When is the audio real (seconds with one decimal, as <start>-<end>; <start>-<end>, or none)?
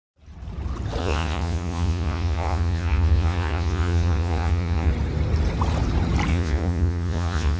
0.0-1.0; 4.9-6.3